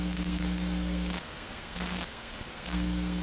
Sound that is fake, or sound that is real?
fake